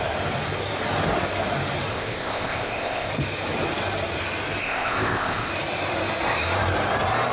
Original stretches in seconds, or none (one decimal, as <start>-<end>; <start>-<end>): 0.0-1.9; 3.1-4.6; 5.5-7.3